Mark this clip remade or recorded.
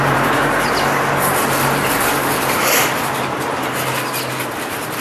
recorded